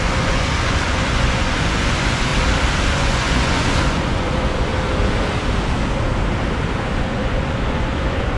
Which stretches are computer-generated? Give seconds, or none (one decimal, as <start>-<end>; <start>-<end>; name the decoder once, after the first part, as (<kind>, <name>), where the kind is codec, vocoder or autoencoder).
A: 0.0-2.3 (vocoder, Vocos); 2.9-4.7; 7.0-8.4